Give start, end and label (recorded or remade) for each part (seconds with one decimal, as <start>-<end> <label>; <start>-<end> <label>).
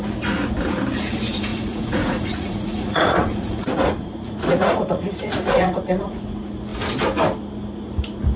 0.0-1.5 recorded; 1.5-6.2 remade; 6.2-8.4 recorded